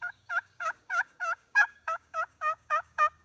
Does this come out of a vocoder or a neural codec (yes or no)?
yes